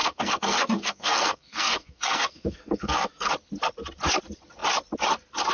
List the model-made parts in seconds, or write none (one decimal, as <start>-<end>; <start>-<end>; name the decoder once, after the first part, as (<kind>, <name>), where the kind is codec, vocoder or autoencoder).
0.0-3.3 (codec, SNAC)